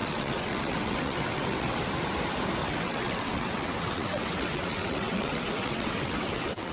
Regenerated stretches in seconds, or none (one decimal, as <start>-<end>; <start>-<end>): 0.0-1.8; 2.6-6.7